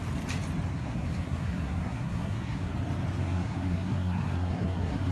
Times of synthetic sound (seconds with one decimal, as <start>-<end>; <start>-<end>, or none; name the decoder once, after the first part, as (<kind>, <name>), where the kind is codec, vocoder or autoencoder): 0.7-2.7 (codec, SNAC); 3.2-5.1